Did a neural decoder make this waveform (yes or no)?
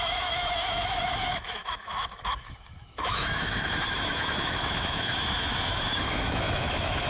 yes